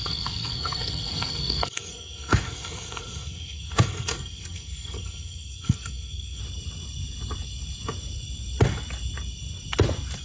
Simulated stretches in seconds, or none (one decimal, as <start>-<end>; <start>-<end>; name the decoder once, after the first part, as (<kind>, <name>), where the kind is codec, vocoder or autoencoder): 0.0-6.4 (codec, SNAC)